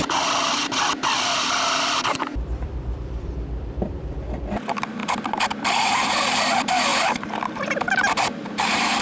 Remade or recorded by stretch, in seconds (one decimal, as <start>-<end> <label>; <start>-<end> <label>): 0.0-5.0 remade; 5.0-5.7 recorded; 5.7-9.0 remade